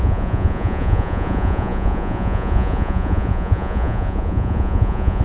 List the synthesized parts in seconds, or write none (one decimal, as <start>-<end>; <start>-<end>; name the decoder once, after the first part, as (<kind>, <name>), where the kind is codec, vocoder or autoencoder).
0.0-5.2 (vocoder, Vocos)